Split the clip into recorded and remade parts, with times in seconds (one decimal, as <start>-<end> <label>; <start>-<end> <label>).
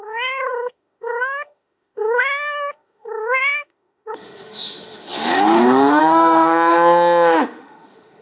0.0-8.2 remade